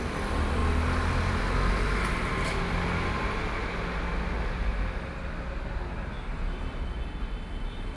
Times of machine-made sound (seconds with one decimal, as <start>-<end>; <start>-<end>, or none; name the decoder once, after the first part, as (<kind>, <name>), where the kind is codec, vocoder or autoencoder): none